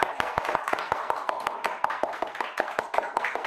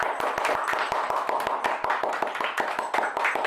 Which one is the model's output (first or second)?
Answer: first